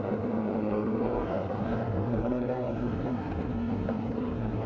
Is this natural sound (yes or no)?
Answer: no